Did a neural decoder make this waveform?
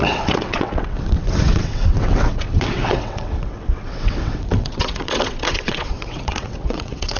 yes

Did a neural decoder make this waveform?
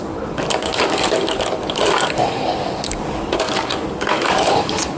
yes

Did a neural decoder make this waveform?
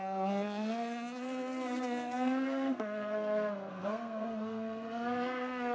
yes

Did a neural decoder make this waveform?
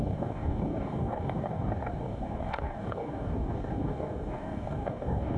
yes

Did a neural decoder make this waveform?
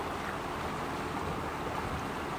no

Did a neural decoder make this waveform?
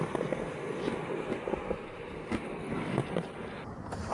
no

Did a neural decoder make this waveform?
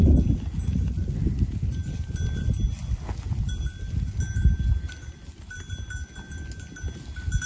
no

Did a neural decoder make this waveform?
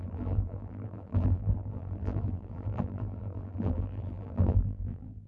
yes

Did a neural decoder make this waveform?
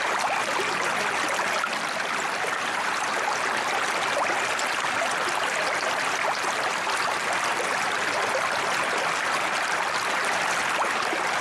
no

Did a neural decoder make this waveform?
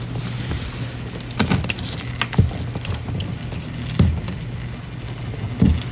no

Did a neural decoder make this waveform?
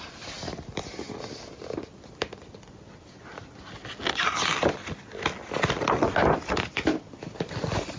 no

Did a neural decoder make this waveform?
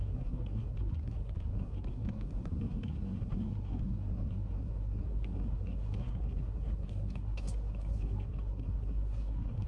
yes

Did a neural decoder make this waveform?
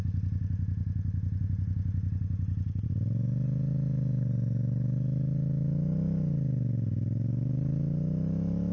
no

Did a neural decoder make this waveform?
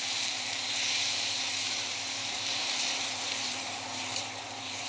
yes